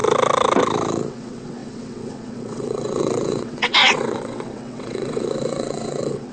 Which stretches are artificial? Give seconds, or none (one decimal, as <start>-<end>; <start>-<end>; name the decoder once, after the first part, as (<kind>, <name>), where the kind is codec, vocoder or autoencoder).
1.1-6.3 (vocoder, WaveNeXt)